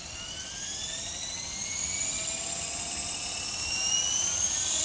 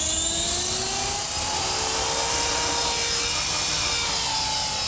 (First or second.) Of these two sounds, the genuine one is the second